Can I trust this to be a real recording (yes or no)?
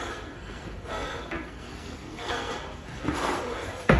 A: no